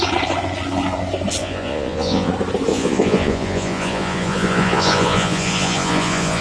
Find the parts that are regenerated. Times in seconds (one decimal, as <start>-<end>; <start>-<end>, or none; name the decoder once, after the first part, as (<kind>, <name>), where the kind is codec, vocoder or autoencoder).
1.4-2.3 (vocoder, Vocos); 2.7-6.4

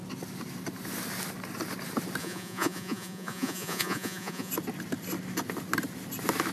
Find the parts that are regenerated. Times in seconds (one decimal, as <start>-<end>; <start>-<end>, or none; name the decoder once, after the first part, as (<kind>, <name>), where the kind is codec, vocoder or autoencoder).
2.2-4.5 (vocoder, Vocos)

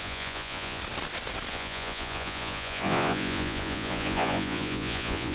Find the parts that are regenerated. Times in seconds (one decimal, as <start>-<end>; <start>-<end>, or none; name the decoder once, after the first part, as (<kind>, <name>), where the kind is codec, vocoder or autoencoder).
0.0-0.8 (vocoder, Vocos); 1.5-5.3

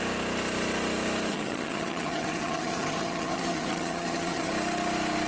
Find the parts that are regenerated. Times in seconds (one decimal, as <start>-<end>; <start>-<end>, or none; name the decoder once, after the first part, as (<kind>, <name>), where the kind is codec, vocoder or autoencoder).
1.3-4.5 (vocoder, HiFi-GAN)